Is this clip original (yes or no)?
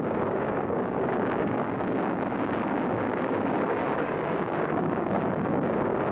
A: no